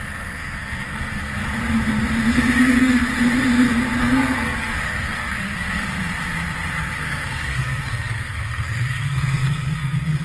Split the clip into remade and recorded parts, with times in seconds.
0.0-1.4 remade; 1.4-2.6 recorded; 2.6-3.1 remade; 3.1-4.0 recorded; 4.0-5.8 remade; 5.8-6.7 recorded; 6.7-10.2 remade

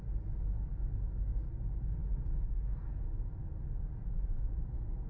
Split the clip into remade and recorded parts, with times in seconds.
0.0-0.5 recorded; 0.5-1.3 remade; 1.3-5.1 recorded